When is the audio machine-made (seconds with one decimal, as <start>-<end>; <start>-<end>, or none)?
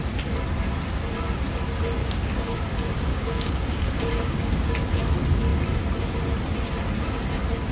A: 2.0-2.7; 3.1-4.7